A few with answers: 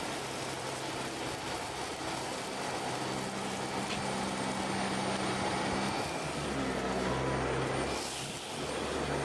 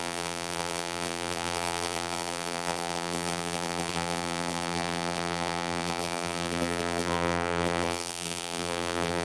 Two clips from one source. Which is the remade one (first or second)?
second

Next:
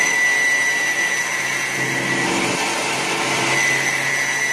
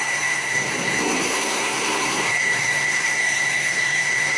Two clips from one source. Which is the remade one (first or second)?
second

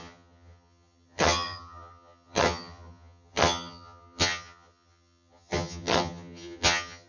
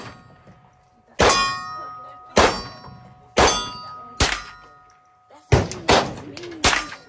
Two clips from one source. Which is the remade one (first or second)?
first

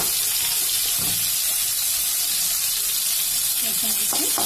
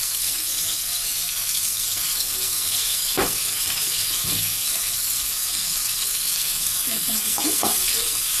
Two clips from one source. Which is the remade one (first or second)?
second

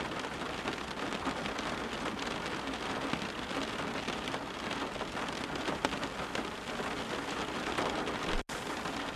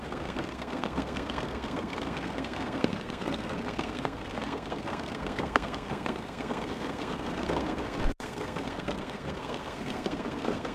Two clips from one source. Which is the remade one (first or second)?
second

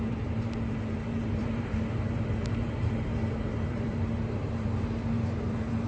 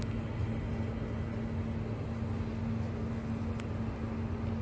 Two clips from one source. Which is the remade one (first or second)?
first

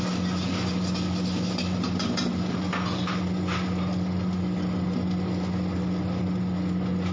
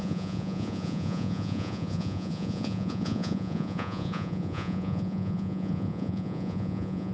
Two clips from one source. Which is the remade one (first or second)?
second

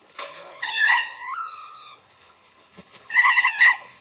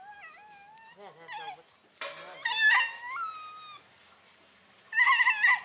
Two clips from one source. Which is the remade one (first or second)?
first